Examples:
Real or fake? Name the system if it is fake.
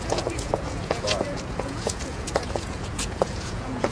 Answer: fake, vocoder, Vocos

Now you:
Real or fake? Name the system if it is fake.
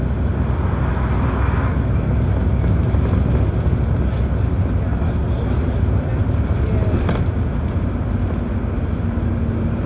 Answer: real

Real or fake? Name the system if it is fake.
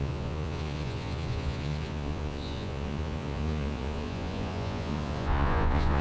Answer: fake, vocoder, Vocos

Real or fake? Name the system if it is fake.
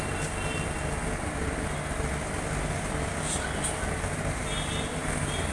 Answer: real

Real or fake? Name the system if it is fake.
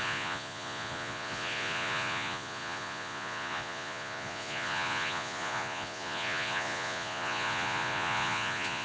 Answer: fake, vocoder, Vocos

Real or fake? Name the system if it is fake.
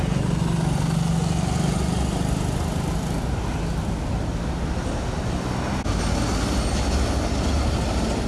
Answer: real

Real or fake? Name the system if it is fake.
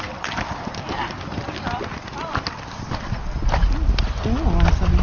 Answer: real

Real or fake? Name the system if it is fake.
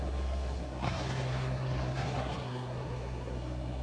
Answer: fake, codec, SNAC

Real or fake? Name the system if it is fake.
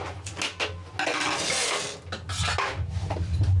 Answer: real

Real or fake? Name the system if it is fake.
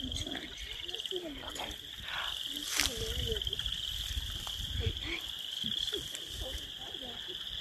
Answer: real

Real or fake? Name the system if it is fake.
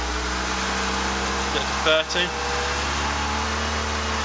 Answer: real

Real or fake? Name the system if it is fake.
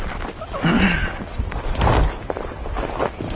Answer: real